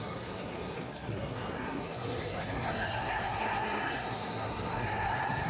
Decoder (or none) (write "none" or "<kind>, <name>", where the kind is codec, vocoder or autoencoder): codec, SNAC